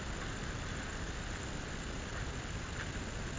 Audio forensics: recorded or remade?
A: recorded